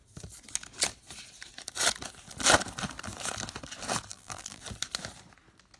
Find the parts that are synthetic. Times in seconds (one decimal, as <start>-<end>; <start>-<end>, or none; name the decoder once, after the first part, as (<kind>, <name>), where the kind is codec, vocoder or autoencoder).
4.1-4.6 (vocoder, BigVGAN v2)